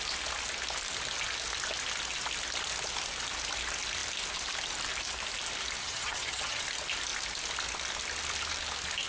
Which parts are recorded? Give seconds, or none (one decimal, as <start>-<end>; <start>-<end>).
0.0-5.8; 6.6-9.1